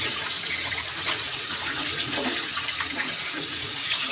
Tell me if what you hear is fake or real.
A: fake